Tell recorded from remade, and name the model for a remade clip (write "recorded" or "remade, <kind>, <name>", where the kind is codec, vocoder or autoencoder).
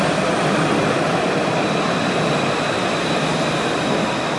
recorded